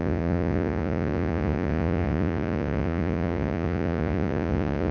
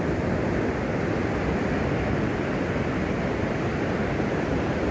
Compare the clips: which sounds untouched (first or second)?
second